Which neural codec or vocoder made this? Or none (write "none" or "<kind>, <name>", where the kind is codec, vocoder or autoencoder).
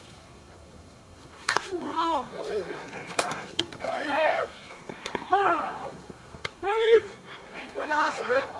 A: codec, SNAC